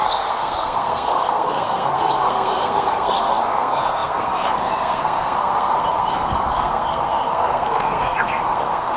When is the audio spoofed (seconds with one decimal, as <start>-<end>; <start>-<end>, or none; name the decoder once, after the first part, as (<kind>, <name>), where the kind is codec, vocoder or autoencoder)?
0.0-9.0 (codec, SNAC)